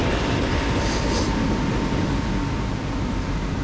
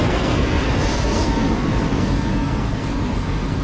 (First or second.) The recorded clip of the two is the first